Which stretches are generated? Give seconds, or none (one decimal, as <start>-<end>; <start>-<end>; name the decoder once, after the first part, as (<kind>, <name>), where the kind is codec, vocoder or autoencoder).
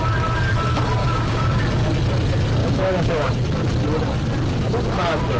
1.0-1.6 (codec, DAC); 2.6-3.3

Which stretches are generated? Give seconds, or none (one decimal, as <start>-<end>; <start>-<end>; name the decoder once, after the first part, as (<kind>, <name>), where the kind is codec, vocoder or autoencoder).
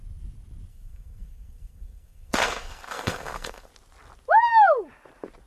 0.7-3.7 (codec, SNAC)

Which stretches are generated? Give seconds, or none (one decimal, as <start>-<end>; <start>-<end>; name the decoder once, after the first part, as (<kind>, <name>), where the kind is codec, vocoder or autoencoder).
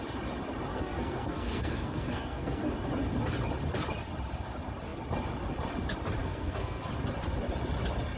0.7-2.6 (codec, SNAC); 6.2-6.8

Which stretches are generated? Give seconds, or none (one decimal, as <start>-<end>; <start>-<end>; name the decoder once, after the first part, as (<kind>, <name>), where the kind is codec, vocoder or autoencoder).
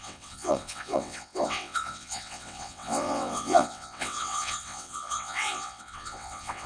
0.0-6.7 (vocoder, WaveNeXt)